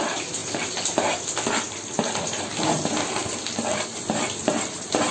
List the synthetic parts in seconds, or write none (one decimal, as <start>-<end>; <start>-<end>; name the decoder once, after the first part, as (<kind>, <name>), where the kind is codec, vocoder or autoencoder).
0.0-5.1 (vocoder, BigVGAN v2)